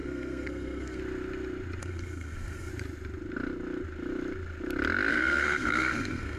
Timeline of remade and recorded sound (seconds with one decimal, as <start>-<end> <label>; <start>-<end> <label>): 0.0-1.0 remade; 1.0-1.8 recorded; 1.8-2.7 remade; 2.7-5.1 recorded; 5.1-6.4 remade